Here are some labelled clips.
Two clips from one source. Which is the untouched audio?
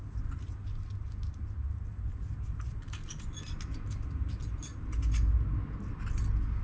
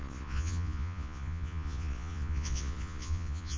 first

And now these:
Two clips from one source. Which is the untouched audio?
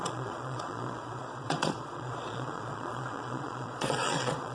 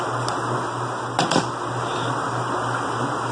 second